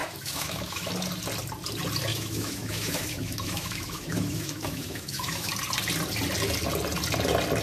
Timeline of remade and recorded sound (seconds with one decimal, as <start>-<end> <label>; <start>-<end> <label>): 0.0-0.9 remade; 0.9-2.1 recorded; 2.1-5.5 remade; 5.5-7.6 recorded